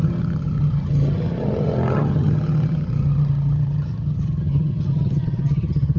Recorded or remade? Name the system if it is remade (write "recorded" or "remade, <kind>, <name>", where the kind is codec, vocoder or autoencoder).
remade, vocoder, HiFi-GAN